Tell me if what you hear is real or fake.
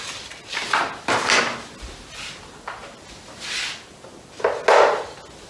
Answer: real